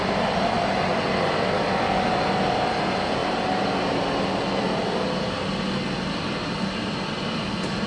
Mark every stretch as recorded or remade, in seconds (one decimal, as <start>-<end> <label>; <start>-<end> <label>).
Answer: 0.0-7.9 recorded